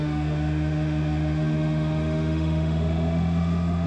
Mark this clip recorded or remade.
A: remade